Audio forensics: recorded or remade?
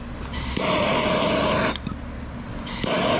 recorded